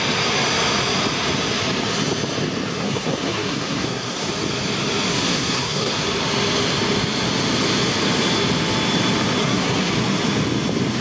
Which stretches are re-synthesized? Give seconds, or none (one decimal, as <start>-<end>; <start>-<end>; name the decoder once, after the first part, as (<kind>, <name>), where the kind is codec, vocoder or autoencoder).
2.7-4.3 (codec, SNAC); 5.1-6.0; 9.4-9.9

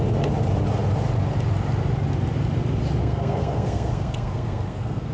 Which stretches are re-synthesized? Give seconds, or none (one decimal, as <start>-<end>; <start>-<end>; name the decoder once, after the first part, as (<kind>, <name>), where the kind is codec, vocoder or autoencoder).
3.0-5.1 (codec, SNAC)

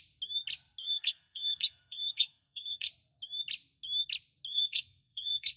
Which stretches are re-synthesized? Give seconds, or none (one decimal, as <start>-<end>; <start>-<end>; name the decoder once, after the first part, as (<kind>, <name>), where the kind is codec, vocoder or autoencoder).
0.8-2.9 (codec, SNAC); 4.5-5.6

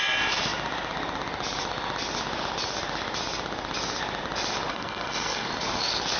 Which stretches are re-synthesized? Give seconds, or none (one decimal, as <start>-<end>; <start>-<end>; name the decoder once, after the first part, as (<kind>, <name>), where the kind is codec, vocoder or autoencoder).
4.7-5.5 (codec, SNAC)

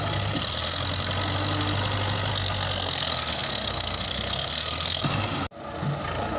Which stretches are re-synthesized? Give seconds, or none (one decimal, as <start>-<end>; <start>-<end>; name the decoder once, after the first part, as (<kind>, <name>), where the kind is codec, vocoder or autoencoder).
2.3-5.0 (codec, SNAC)